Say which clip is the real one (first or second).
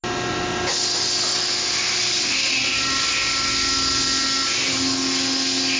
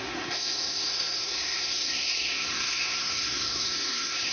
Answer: first